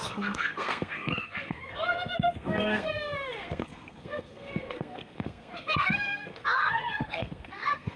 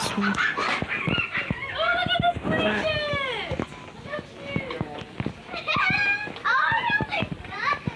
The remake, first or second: first